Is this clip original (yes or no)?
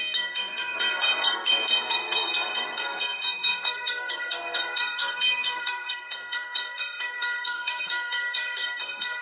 no